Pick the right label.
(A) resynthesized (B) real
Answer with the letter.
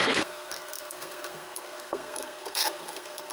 A